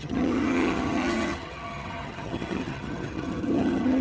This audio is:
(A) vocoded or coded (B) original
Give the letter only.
A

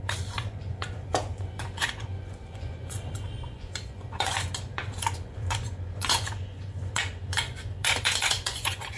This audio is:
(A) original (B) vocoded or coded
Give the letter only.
B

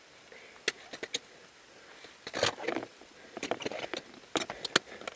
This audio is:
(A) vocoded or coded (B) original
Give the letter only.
B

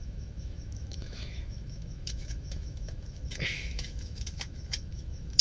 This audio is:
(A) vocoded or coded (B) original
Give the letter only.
A